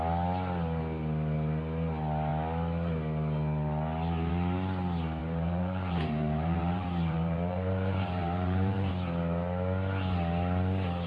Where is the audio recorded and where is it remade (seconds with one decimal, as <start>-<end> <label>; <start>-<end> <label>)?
0.0-5.2 recorded; 5.2-8.9 remade; 8.9-11.1 recorded